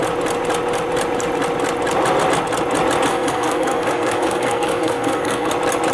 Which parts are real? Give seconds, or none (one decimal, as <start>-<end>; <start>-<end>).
0.0-3.1; 5.5-5.9

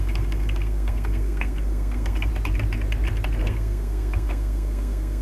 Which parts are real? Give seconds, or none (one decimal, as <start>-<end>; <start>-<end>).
2.3-3.4

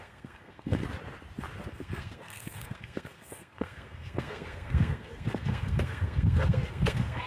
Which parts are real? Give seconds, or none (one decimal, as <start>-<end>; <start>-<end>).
0.8-1.7